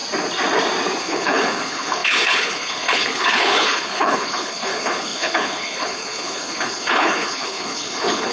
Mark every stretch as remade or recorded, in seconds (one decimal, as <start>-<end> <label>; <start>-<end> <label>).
0.0-1.0 recorded; 1.0-8.3 remade